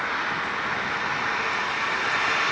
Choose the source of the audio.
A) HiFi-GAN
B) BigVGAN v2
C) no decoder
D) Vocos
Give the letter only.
C